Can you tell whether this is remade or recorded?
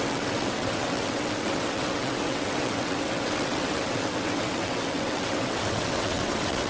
remade